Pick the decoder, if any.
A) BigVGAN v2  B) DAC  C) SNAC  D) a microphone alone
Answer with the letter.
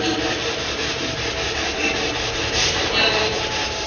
A